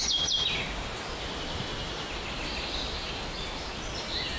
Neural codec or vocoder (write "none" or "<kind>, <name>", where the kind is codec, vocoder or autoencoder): none